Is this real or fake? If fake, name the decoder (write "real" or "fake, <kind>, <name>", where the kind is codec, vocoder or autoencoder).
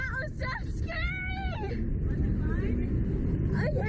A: fake, vocoder, BigVGAN v2